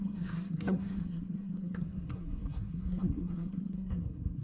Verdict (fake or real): fake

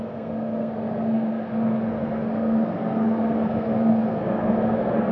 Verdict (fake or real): fake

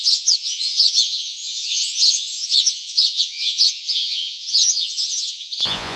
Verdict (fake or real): fake